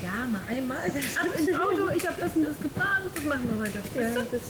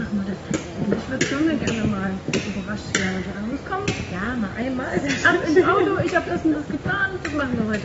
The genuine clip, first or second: second